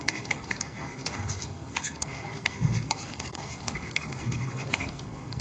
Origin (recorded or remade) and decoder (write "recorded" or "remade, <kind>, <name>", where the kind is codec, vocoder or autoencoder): remade, codec, SNAC